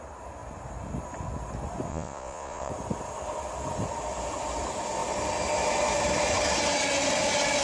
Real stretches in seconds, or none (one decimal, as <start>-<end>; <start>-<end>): 0.0-1.9; 2.7-7.6